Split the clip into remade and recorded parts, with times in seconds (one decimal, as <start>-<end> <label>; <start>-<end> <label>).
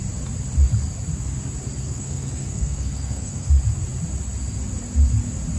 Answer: 0.0-1.9 recorded; 1.9-3.5 remade; 3.5-5.6 recorded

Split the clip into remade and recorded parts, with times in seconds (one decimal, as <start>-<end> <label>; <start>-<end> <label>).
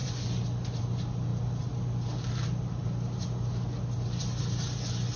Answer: 0.0-5.2 recorded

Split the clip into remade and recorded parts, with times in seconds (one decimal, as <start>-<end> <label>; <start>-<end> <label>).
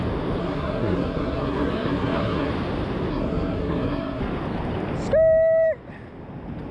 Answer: 0.0-0.4 recorded; 0.4-2.5 remade; 2.5-3.1 recorded; 3.1-4.2 remade; 4.2-6.7 recorded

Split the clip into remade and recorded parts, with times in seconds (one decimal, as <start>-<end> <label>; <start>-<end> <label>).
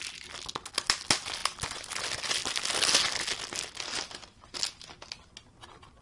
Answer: 0.0-6.0 recorded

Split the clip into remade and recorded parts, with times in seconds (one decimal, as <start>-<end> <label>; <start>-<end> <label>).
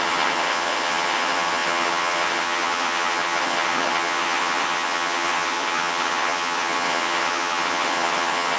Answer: 0.0-8.6 remade